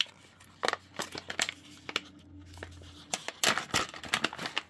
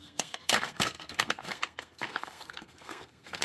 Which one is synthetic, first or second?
second